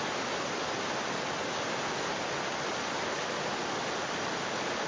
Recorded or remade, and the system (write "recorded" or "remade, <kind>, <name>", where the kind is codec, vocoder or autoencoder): recorded